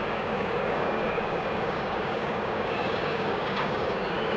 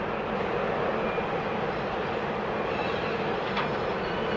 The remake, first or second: first